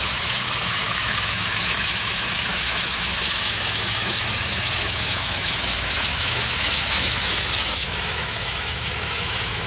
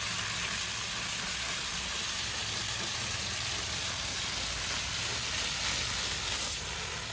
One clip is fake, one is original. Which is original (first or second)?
second